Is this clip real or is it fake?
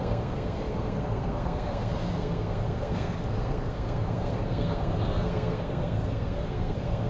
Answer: fake